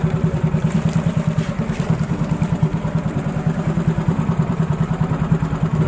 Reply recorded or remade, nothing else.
remade